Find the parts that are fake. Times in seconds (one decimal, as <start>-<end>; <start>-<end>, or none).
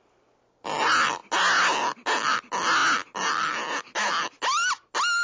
none